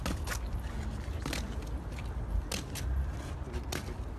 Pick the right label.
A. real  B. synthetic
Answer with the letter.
A